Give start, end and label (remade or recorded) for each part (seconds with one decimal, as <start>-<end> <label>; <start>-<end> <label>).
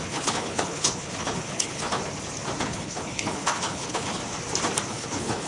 0.0-2.0 remade; 2.0-2.6 recorded; 2.6-4.2 remade; 4.2-4.9 recorded; 4.9-5.5 remade